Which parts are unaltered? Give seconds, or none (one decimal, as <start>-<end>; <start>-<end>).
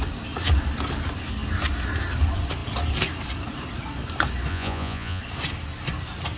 0.0-4.5; 5.2-6.4